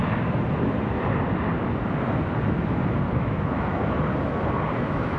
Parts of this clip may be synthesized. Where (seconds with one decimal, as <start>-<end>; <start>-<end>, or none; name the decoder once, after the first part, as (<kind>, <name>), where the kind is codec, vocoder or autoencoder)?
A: 3.1-3.8 (autoencoder, DAC-VAE); 4.8-5.2